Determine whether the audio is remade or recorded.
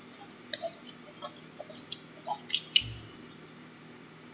recorded